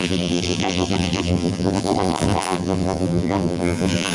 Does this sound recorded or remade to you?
remade